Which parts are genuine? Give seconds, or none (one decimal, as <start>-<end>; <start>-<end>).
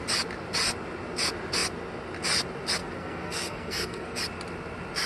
0.0-2.8; 4.2-5.1